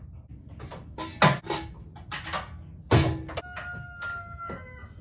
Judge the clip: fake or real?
real